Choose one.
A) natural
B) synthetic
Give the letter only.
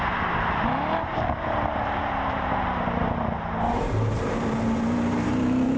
B